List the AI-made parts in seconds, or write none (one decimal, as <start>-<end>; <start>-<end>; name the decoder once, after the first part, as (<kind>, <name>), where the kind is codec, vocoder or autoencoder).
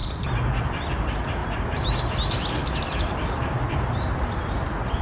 0.0-0.9 (vocoder, BigVGAN v2); 1.4-4.4